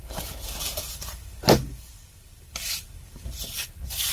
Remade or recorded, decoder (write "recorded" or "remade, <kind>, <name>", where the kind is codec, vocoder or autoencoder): remade, vocoder, BigVGAN v2